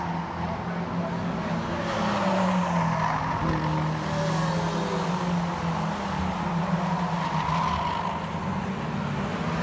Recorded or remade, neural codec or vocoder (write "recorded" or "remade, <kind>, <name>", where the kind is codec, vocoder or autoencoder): recorded